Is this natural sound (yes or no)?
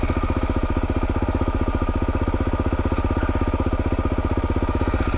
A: yes